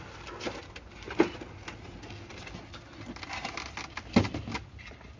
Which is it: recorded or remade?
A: recorded